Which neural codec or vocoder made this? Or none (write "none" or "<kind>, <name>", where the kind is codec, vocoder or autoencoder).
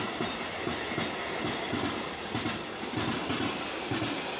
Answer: none